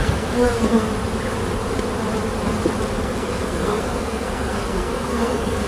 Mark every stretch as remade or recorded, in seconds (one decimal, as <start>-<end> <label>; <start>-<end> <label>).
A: 0.0-0.9 remade; 0.9-3.0 recorded; 3.0-5.7 remade